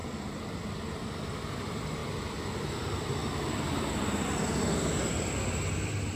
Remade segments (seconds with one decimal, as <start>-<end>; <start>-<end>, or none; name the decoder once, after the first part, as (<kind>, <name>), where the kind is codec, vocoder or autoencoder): 1.4-2.0 (vocoder, BigVGAN v2); 2.5-3.2; 5.1-6.2